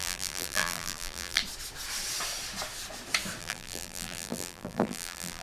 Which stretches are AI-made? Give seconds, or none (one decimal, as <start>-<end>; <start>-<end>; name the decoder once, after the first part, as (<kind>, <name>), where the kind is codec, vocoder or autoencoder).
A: 0.0-1.4 (vocoder, BigVGAN v2); 3.4-5.4